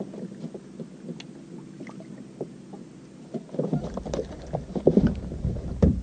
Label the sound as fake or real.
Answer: real